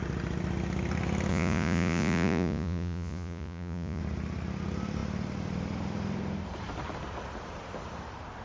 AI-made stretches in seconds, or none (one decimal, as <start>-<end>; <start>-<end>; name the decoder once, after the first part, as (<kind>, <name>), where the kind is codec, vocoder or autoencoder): 1.3-4.0 (vocoder, Vocos)